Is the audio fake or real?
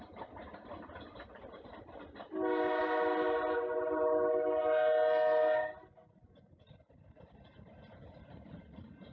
real